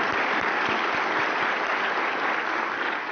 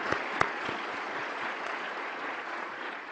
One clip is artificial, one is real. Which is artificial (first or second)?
second